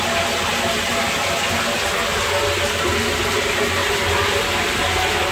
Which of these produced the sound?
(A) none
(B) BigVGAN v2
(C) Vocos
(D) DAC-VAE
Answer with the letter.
A